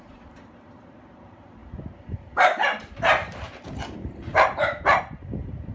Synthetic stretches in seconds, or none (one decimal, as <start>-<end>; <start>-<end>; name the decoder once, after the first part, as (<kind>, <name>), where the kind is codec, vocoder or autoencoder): 0.0-5.7 (vocoder, BigVGAN v2)